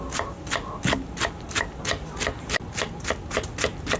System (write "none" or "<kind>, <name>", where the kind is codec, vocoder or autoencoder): none